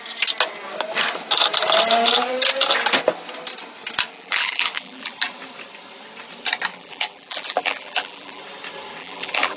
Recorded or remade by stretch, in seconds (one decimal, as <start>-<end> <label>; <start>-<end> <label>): 0.0-4.1 recorded; 4.1-5.1 remade; 5.1-6.7 recorded; 6.7-8.4 remade; 8.4-9.0 recorded; 9.0-9.6 remade